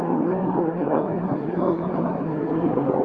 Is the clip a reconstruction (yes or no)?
yes